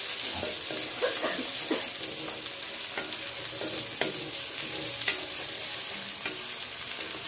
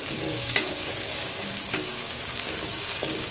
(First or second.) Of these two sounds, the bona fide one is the first